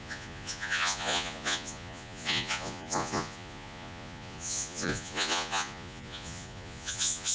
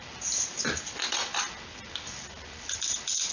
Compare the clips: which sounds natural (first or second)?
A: second